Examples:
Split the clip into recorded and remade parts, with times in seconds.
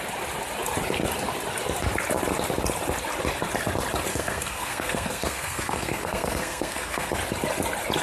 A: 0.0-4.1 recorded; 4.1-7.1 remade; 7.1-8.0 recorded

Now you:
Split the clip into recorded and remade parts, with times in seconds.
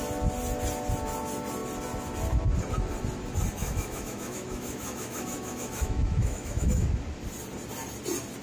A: 0.0-3.6 recorded; 3.6-6.9 remade; 6.9-8.4 recorded